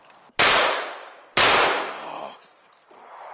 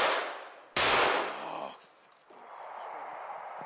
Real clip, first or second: second